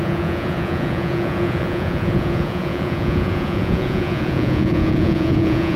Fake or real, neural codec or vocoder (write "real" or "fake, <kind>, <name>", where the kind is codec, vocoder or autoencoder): fake, vocoder, Vocos